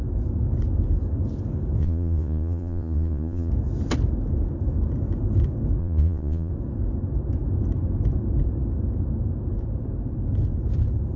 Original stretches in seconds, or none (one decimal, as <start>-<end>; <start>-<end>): 0.0-1.8; 3.5-5.8; 6.5-11.2